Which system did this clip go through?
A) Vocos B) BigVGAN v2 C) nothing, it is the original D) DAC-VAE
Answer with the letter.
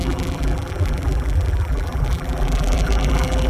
B